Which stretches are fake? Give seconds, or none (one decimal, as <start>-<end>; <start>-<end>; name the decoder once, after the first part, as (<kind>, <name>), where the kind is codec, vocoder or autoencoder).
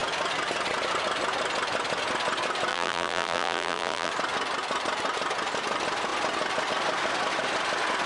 2.7-4.1 (vocoder, BigVGAN v2)